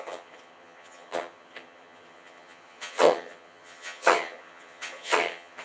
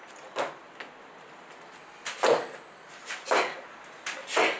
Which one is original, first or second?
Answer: second